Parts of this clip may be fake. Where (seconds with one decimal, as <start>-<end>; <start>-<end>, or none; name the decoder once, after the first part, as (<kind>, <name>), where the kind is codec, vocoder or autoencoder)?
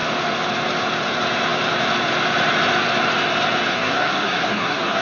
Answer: 3.7-5.0 (codec, SNAC)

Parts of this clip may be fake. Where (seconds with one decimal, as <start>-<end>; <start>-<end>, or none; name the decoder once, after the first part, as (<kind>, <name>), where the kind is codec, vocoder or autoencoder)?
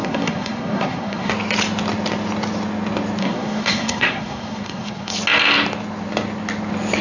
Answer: 0.0-1.3 (codec, SNAC); 3.2-5.1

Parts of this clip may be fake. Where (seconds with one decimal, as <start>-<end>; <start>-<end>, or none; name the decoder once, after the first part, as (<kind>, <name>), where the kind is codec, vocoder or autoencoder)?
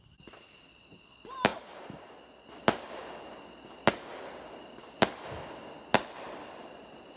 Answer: none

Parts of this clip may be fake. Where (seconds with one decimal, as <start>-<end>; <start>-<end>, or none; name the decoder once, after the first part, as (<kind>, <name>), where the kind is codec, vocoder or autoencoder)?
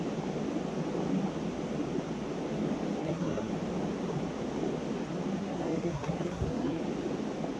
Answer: 3.0-3.5 (codec, SNAC); 5.4-6.8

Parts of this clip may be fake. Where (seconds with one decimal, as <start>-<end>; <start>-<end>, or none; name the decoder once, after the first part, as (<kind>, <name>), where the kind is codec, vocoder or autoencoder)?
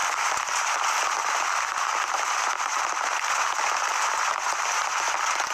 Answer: none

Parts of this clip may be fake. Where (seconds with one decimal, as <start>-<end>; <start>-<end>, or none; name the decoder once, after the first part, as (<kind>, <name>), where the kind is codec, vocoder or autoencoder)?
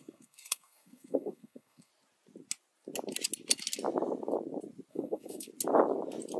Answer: 0.0-1.9 (codec, SNAC); 4.9-5.5